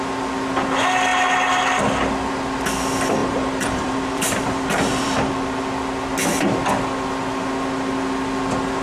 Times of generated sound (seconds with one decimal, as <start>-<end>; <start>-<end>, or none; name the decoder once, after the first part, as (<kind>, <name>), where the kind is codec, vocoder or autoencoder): 3.2-5.3 (vocoder, BigVGAN v2)

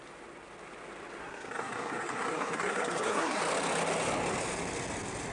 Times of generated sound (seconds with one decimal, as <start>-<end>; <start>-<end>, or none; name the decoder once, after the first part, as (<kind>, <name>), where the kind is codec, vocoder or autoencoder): 1.2-3.4 (codec, SNAC)

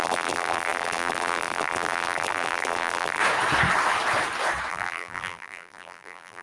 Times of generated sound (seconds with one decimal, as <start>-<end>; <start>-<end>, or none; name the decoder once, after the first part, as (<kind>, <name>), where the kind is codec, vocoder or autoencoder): 0.0-3.2 (vocoder, BigVGAN v2); 4.7-6.4

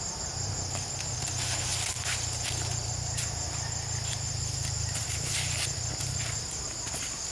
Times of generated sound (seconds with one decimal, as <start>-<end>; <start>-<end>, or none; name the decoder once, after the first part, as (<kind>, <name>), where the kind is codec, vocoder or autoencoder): none

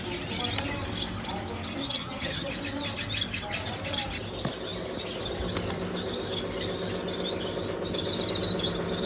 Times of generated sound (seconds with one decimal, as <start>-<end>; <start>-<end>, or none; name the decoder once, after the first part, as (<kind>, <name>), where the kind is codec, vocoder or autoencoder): 1.8-2.5 (vocoder, HiFi-GAN)

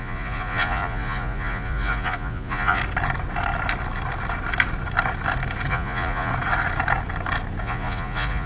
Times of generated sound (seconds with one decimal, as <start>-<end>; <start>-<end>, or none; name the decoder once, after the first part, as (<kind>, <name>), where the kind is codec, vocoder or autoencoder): 0.0-2.8 (vocoder, Vocos); 5.7-6.3; 7.6-8.5

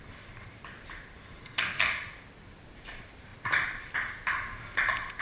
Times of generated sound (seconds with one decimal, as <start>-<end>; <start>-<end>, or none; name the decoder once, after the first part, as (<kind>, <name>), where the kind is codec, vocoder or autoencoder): 1.4-1.9 (codec, SNAC)

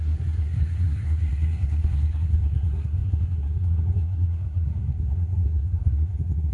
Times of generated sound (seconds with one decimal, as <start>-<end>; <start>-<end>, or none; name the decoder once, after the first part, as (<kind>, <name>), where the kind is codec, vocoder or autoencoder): 0.0-6.5 (codec, SNAC)